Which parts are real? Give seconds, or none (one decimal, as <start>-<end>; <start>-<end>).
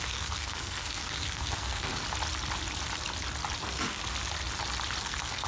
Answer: 1.9-3.6; 4.0-5.0